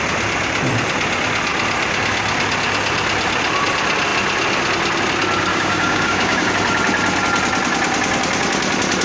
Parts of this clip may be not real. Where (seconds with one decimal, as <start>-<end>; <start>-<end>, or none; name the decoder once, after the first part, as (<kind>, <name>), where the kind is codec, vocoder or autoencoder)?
5.5-6.5 (codec, DAC)